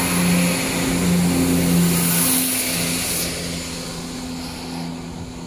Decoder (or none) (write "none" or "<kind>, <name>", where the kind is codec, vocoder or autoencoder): none